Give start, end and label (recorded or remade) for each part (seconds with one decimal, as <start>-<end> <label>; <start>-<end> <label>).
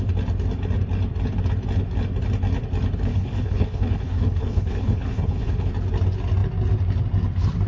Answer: 0.0-3.1 recorded; 3.1-5.7 remade; 5.7-7.7 recorded